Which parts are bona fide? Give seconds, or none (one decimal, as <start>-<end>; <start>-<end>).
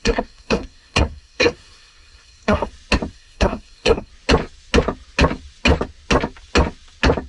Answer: 2.7-3.1; 4.1-7.3